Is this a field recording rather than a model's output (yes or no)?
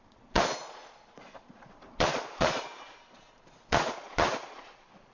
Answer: no